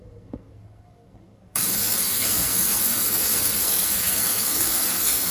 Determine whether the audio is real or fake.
fake